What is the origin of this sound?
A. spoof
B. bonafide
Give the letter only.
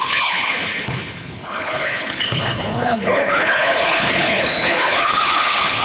A